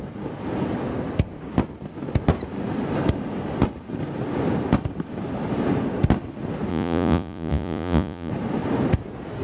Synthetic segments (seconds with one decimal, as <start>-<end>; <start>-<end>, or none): 6.7-8.3